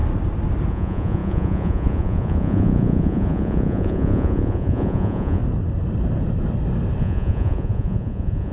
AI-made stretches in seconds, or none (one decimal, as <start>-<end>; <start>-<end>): 0.7-5.4; 7.0-8.5